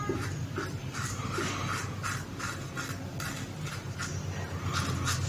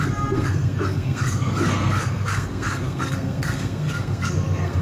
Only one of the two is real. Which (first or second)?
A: first